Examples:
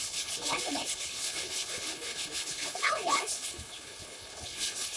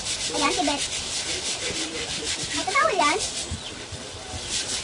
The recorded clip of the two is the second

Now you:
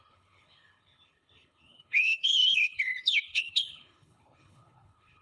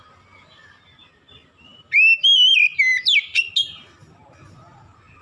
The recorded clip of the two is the second